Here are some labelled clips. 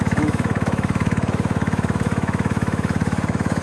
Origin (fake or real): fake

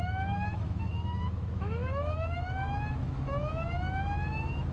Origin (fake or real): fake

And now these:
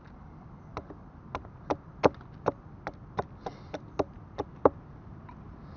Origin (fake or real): real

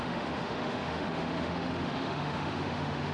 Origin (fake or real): fake